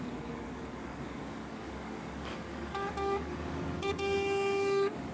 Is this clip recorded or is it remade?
remade